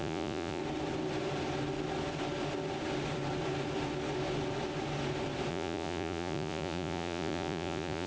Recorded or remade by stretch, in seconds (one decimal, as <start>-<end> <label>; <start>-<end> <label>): 0.0-0.6 remade; 0.6-5.5 recorded; 5.5-8.1 remade